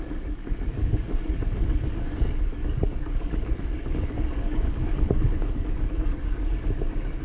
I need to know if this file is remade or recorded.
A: remade